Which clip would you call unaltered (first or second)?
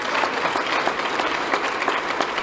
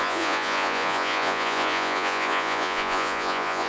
first